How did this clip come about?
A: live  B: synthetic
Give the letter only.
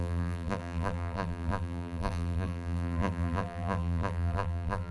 B